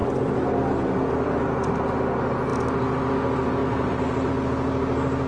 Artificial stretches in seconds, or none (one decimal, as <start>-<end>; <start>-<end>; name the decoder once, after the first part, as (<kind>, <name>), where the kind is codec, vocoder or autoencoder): 3.6-4.3 (vocoder, BigVGAN v2)